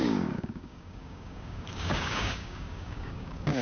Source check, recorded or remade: remade